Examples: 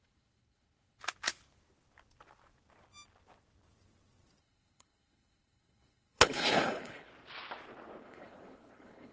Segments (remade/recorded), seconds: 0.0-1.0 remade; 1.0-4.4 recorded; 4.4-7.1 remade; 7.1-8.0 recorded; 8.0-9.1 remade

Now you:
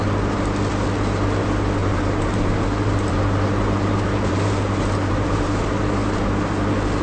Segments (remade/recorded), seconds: 0.0-1.8 recorded; 1.8-5.6 remade; 5.6-7.0 recorded

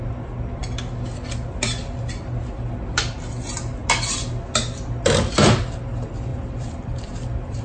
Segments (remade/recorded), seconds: 0.0-6.3 recorded; 6.3-7.6 remade

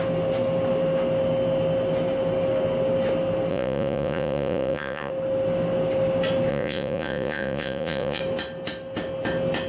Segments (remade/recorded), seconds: 0.0-3.5 recorded; 3.5-5.1 remade; 5.1-6.5 recorded; 6.5-8.2 remade; 8.2-9.7 recorded